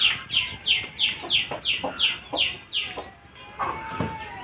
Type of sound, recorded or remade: recorded